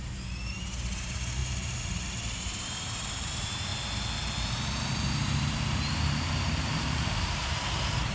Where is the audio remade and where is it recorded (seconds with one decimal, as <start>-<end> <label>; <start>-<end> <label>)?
0.0-3.7 remade; 3.7-5.1 recorded; 5.1-8.1 remade